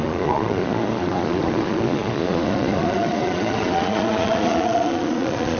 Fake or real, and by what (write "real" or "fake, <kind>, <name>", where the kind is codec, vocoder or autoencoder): fake, vocoder, Vocos